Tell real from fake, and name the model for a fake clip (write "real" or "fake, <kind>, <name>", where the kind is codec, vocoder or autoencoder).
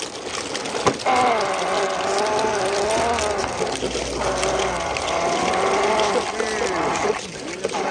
real